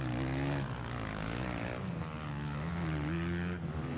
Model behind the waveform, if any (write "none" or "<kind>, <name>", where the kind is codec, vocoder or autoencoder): none